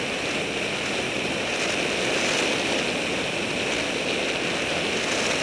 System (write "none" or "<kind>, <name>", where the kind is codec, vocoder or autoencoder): none